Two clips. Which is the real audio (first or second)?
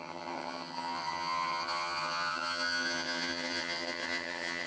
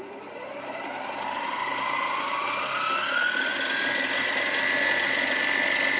second